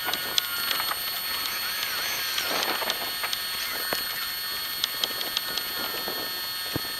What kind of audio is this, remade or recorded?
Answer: recorded